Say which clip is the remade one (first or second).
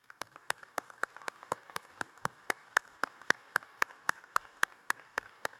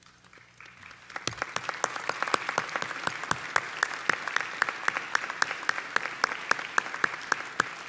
first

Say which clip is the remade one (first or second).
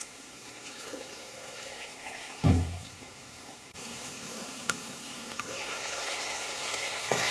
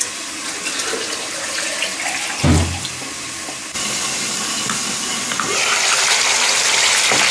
first